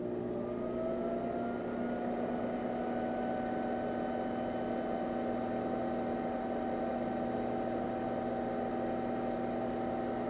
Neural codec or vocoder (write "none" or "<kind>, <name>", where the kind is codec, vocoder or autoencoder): none